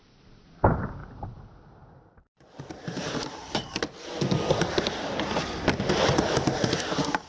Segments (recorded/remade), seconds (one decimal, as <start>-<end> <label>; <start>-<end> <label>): 0.0-7.3 recorded